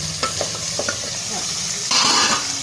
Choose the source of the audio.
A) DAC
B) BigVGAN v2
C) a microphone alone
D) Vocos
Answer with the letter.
C